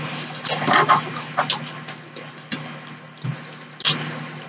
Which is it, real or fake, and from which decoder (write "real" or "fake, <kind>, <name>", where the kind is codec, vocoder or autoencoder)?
real